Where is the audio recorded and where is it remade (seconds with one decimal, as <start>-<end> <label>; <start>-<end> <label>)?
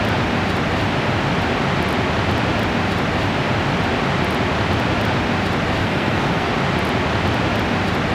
0.0-5.8 recorded; 5.8-6.5 remade; 6.5-8.1 recorded